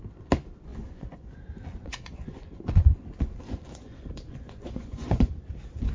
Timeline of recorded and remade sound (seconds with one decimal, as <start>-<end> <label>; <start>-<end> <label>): 0.0-0.7 recorded; 0.7-1.4 remade; 1.4-1.8 recorded; 1.8-5.3 remade; 5.3-5.9 recorded

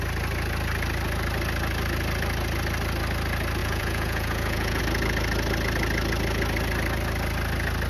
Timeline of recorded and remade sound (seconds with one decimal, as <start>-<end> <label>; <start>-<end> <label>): 0.0-3.6 recorded; 3.6-4.8 remade; 4.8-7.9 recorded

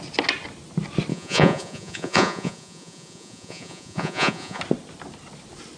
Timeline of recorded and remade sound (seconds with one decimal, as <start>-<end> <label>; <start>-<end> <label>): 0.0-1.1 recorded; 1.1-4.6 remade; 4.6-5.8 recorded